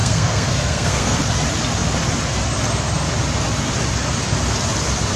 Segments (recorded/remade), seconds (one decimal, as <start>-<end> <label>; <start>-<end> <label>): 0.0-1.2 remade; 1.2-5.2 recorded